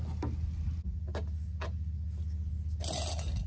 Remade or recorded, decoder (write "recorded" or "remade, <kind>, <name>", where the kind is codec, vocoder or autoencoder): recorded